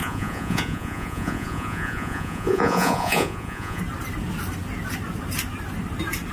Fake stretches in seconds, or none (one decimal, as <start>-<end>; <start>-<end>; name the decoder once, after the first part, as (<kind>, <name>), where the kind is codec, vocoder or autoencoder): 0.0-3.8 (vocoder, Vocos)